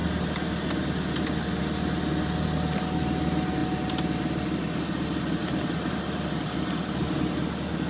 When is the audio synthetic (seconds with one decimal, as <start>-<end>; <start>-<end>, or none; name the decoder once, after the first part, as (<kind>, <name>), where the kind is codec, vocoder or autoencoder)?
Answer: none